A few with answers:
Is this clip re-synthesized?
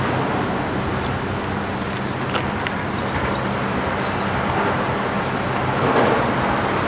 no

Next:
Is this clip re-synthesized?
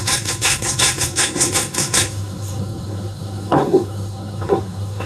yes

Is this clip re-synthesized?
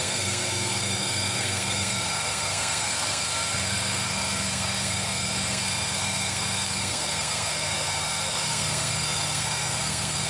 yes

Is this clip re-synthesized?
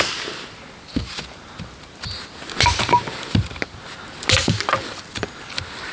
no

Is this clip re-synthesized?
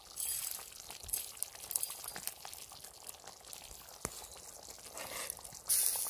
no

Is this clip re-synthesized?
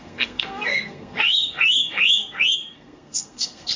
yes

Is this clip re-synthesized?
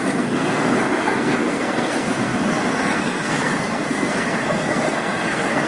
yes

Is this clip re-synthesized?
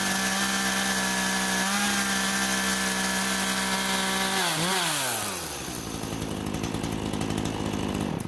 no